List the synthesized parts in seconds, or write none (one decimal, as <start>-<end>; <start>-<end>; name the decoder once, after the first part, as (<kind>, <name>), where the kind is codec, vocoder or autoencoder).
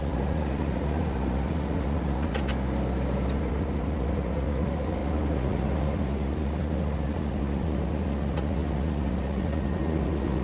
0.0-2.5 (vocoder, Vocos); 3.3-10.4